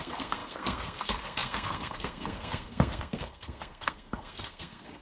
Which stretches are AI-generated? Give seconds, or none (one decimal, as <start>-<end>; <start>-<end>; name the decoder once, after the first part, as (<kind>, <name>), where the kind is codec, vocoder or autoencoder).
0.0-5.0 (codec, SNAC)